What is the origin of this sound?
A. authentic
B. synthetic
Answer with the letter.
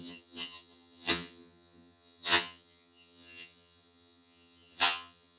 B